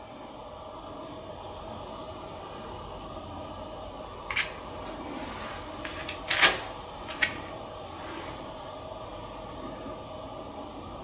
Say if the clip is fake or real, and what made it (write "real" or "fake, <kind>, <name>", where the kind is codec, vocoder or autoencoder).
real